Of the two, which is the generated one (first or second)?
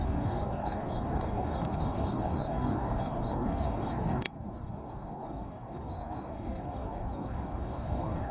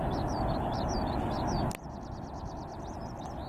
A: first